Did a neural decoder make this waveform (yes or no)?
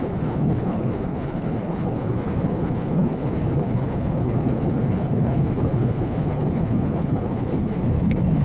yes